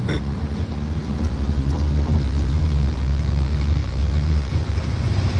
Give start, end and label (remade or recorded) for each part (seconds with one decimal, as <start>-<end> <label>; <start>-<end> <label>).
0.0-5.4 remade